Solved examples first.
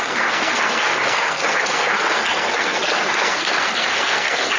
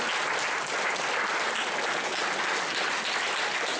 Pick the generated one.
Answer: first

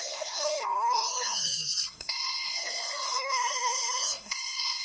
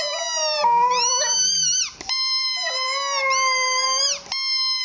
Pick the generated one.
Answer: first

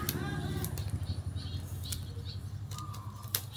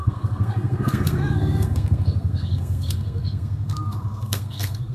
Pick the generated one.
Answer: second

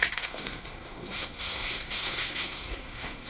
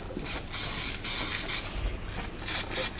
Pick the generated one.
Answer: first